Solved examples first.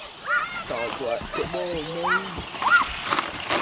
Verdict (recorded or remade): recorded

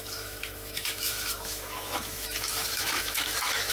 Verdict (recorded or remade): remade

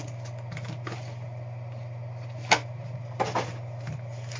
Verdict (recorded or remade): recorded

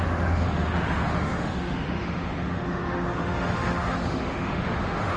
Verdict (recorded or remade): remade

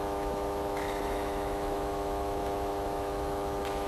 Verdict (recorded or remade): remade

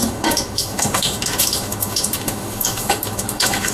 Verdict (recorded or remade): remade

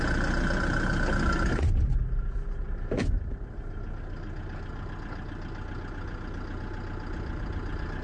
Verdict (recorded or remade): recorded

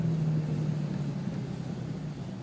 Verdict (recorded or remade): recorded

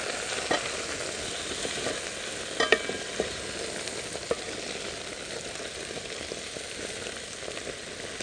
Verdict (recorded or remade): recorded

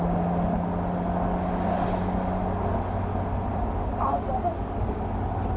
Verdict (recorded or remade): recorded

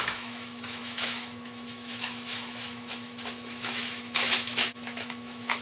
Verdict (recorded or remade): remade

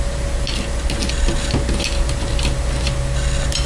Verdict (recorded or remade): recorded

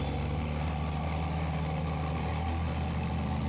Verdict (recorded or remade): recorded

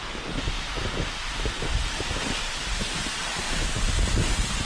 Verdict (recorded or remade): recorded